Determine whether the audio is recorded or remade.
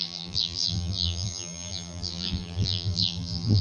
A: remade